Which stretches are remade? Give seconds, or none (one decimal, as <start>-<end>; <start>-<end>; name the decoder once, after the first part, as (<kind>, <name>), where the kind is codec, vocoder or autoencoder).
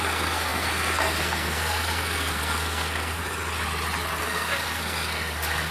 0.0-3.2 (codec, SNAC); 4.2-5.7